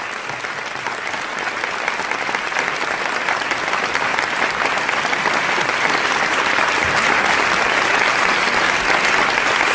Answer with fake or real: real